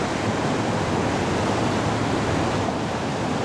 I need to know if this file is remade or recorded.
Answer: recorded